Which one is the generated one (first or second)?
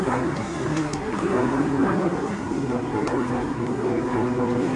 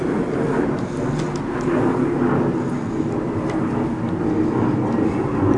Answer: first